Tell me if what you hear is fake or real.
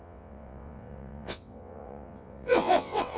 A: fake